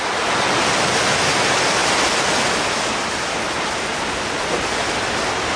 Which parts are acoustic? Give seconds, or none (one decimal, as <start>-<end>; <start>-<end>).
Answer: 0.0-5.6